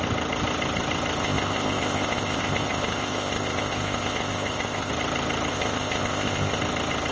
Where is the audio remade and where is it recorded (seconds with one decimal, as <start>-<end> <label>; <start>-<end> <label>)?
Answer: 0.0-1.2 recorded; 1.2-4.9 remade; 4.9-5.5 recorded; 5.5-6.6 remade; 6.6-7.1 recorded